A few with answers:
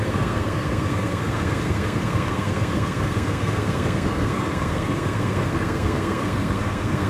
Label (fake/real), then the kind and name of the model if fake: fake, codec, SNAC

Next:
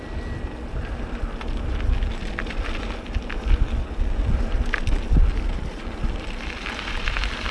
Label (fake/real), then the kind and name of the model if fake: real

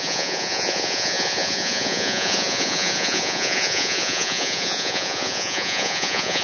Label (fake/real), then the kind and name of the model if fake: fake, vocoder, Vocos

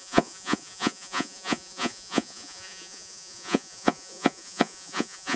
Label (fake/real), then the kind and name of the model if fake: fake, vocoder, Vocos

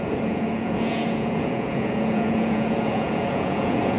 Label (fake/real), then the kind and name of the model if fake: fake, vocoder, Vocos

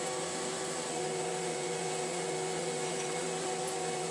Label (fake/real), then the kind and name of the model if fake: fake, vocoder, Vocos